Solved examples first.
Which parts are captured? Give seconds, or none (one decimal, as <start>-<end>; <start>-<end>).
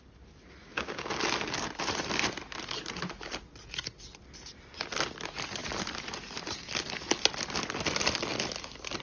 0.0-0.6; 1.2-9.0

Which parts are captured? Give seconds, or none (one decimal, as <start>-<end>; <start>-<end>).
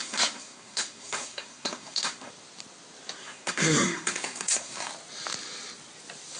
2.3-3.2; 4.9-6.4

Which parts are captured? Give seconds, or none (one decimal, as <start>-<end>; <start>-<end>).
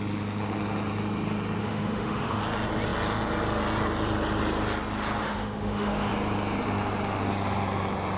0.0-1.6; 2.4-5.2; 6.1-8.2